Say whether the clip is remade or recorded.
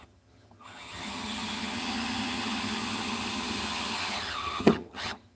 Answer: remade